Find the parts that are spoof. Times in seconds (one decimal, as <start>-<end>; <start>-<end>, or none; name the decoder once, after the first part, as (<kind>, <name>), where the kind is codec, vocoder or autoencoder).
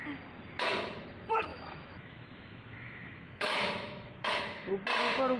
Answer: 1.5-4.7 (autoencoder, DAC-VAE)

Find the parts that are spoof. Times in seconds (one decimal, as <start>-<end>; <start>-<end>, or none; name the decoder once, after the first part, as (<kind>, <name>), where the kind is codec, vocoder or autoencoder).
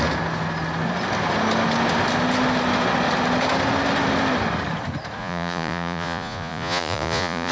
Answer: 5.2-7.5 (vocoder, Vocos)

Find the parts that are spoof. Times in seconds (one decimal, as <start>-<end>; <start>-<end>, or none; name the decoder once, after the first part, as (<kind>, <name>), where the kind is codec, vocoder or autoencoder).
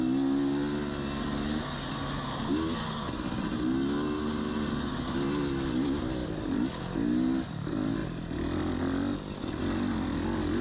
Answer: none